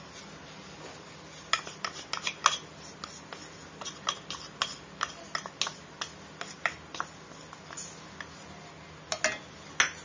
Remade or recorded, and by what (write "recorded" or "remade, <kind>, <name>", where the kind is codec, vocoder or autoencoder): recorded